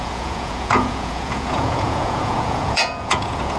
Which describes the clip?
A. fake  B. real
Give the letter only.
A